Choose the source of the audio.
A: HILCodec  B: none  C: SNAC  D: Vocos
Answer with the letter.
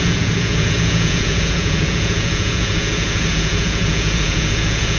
D